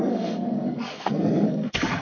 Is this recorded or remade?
remade